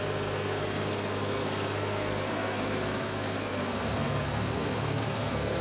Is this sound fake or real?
fake